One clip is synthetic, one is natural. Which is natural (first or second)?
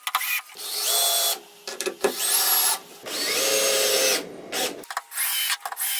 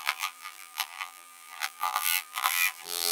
first